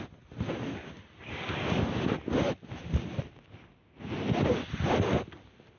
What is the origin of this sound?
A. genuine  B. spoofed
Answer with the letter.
A